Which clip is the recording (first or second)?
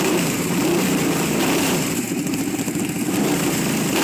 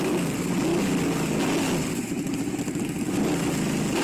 second